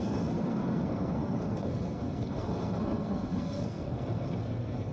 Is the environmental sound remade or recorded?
remade